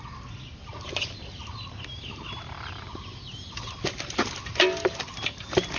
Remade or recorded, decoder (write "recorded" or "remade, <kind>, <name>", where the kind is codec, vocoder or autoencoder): recorded